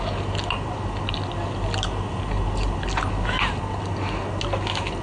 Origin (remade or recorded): recorded